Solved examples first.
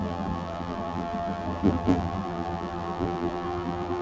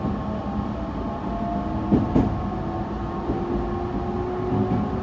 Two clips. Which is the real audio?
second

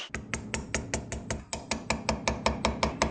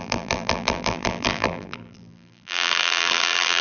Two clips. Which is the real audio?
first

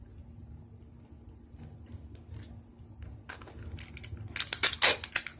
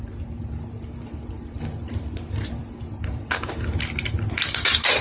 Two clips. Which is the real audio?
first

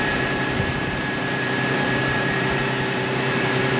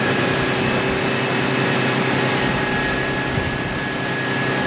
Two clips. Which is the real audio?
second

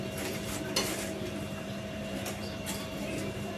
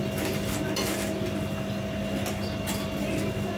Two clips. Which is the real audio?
second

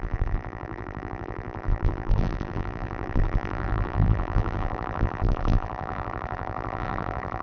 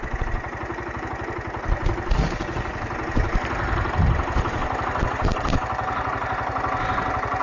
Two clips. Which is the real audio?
second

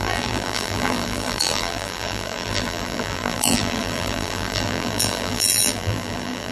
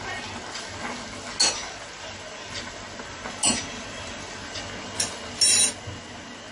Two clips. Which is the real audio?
second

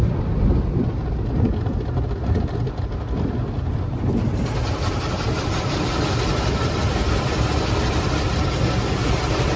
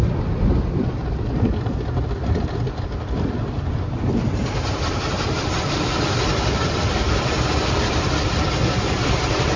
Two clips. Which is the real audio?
first